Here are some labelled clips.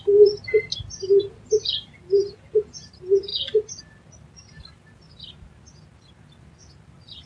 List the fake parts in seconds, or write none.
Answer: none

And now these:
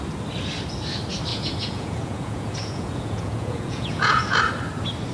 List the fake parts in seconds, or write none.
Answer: 1.3-4.4 (vocoder, Vocos)

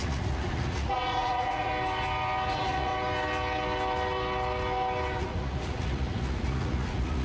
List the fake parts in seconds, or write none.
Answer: 0.0-1.7 (vocoder, Vocos); 2.5-2.9; 5.2-7.2

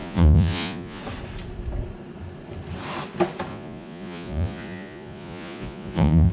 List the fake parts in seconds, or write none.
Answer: 0.0-1.0 (vocoder, Vocos); 3.5-6.3

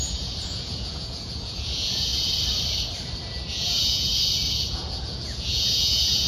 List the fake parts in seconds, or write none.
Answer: 0.0-2.1 (vocoder, Vocos); 3.5-4.1; 4.7-6.3

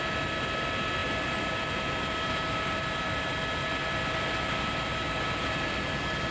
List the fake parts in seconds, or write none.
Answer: none

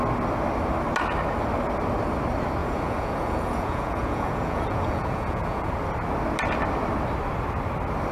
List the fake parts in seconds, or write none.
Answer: 2.6-5.7 (vocoder, Vocos)

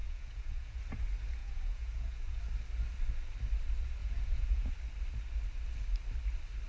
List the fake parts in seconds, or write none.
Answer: 0.0-0.8 (vocoder, Vocos); 1.4-2.4; 4.0-4.7